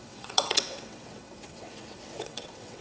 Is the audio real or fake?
fake